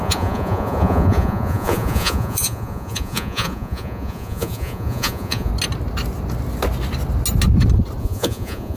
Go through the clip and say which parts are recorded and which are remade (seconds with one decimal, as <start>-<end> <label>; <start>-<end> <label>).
0.0-5.5 remade; 5.5-8.0 recorded; 8.0-8.8 remade